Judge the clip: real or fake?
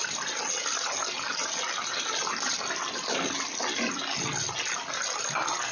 real